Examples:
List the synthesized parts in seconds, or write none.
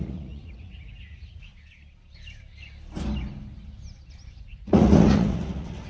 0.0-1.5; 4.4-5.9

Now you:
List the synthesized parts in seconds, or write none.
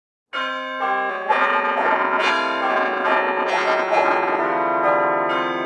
1.1-2.3; 2.7-4.4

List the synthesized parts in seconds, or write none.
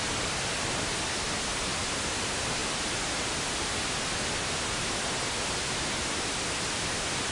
none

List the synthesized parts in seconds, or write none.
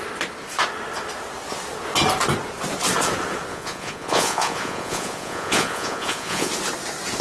3.5-6.5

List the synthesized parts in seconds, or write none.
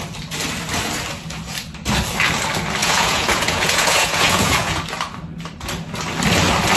2.8-4.8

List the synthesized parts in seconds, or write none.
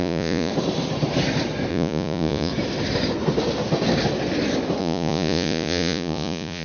0.0-0.5; 1.7-2.5; 4.8-6.6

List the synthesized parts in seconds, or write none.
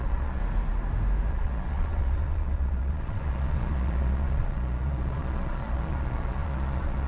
0.0-0.4; 1.3-7.1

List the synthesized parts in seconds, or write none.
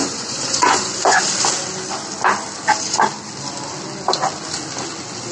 0.0-1.2